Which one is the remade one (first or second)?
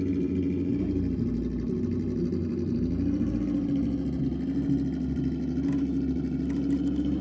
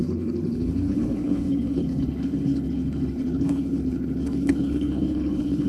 second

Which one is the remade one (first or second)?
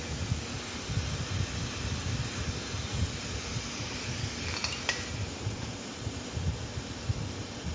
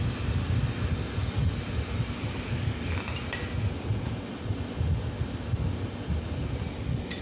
first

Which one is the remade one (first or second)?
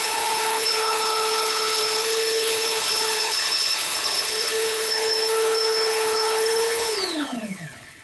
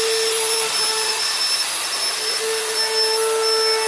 first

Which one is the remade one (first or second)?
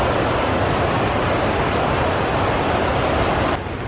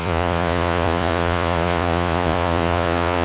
second